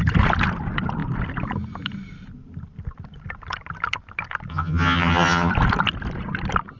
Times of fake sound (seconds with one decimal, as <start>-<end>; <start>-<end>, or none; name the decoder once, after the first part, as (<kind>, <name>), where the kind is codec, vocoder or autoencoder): 4.5-5.5 (vocoder, HiFi-GAN)